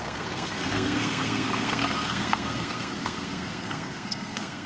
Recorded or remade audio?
remade